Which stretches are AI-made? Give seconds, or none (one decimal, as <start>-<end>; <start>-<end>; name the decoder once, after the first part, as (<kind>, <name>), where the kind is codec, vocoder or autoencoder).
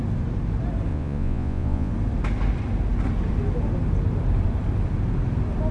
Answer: 0.9-1.9 (vocoder, Vocos)